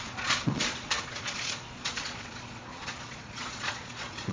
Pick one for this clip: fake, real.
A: fake